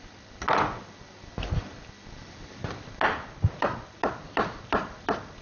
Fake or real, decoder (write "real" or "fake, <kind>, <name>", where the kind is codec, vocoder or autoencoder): real